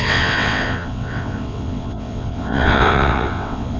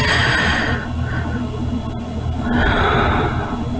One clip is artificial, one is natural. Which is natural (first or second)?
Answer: second